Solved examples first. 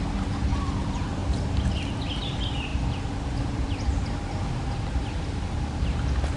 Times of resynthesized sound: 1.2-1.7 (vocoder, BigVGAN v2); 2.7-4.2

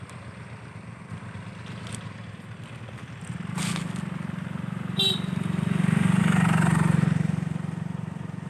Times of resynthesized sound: none

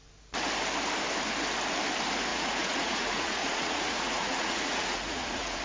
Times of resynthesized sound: 2.3-5.6 (vocoder, Vocos)

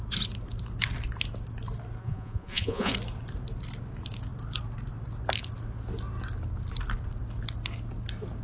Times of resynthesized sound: 2.0-2.9 (vocoder, Vocos)

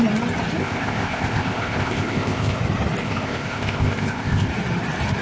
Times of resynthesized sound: 0.6-2.6 (codec, ZipCodec); 3.0-4.5

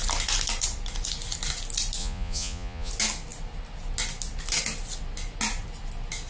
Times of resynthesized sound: 2.0-2.9 (vocoder, Vocos)